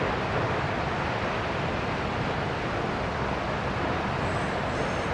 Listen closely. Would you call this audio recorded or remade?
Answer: recorded